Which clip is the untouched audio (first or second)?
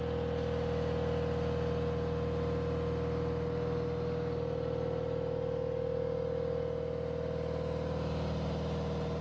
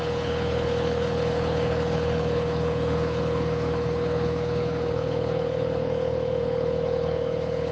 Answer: first